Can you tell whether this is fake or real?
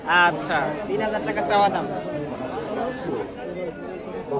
real